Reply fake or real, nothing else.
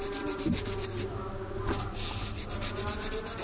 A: real